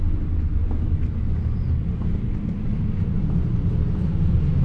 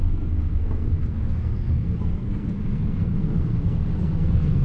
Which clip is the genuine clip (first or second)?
first